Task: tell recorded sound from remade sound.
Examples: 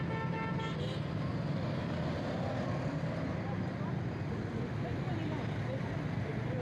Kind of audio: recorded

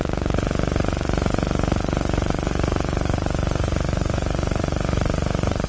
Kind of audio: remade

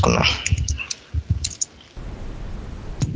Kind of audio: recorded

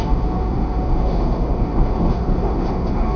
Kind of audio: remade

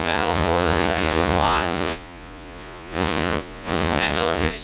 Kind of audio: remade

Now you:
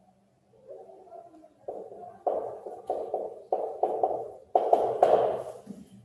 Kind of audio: recorded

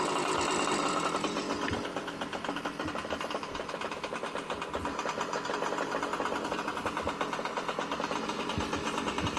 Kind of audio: recorded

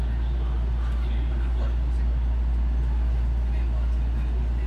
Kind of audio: recorded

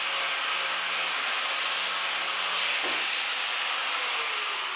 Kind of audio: recorded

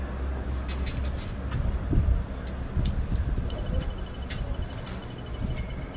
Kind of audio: recorded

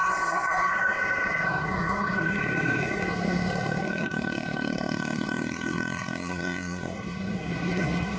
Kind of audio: remade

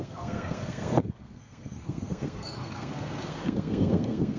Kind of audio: remade